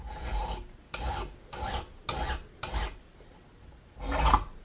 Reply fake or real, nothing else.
real